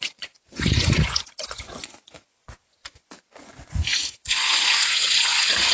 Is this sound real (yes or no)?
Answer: no